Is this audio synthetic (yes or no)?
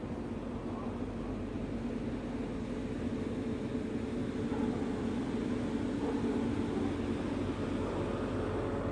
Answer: no